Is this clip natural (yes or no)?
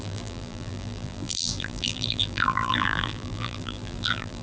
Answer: no